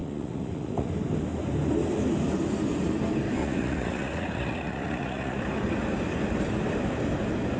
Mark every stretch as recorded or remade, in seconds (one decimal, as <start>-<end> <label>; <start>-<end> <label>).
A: 0.0-0.9 remade; 0.9-3.4 recorded; 3.4-5.4 remade; 5.4-7.6 recorded